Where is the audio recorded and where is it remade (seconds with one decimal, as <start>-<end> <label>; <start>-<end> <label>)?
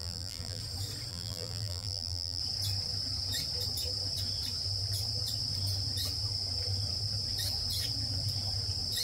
0.0-0.6 remade; 0.6-1.1 recorded; 1.1-2.4 remade; 2.4-9.0 recorded